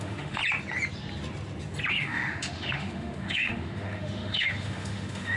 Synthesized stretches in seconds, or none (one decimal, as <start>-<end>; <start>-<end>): 0.0-0.4; 1.9-5.4